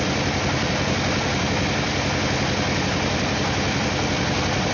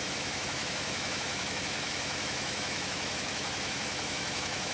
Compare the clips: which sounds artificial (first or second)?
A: second